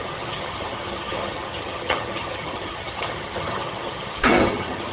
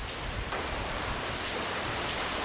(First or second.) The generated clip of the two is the first